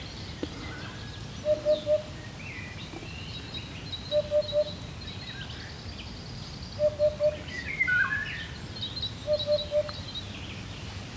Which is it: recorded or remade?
recorded